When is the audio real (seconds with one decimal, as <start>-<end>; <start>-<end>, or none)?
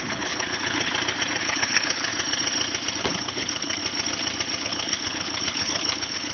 0.9-1.4; 2.1-3.0; 3.8-4.6